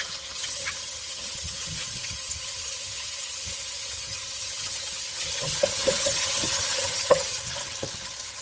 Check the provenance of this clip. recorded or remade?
remade